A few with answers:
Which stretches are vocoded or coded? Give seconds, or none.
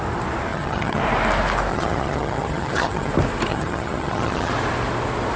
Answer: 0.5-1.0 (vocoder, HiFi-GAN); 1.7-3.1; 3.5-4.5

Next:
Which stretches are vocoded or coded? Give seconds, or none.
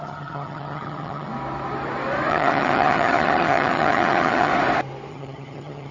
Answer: 0.0-1.3 (vocoder, HiFi-GAN); 2.3-4.5; 5.1-5.9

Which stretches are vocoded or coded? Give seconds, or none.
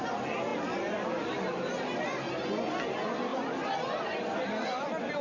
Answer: none